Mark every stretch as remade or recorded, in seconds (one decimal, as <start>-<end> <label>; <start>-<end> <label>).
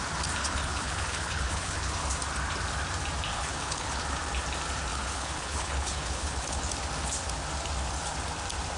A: 0.0-0.4 recorded; 0.4-1.9 remade; 1.9-3.3 recorded; 3.3-4.0 remade; 4.0-4.9 recorded; 4.9-6.6 remade; 6.6-8.8 recorded